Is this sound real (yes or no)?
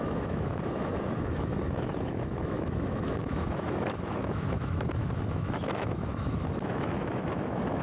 no